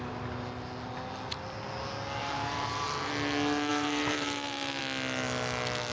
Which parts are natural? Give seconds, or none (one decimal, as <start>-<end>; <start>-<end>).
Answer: 0.0-2.2; 3.1-3.7; 4.8-5.9